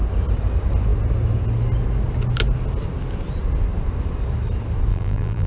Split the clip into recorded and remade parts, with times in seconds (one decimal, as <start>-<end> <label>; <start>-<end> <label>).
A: 0.0-4.9 recorded; 4.9-5.5 remade